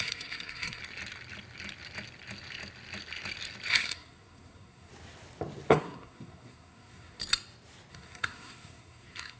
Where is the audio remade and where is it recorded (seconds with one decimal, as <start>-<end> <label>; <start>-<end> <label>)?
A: 0.0-0.8 remade; 0.8-3.7 recorded; 3.7-4.9 remade; 4.9-5.7 recorded; 5.7-7.2 remade; 7.2-7.9 recorded; 7.9-9.4 remade